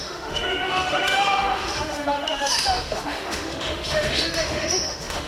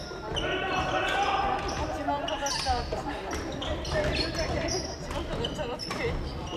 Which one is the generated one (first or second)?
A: first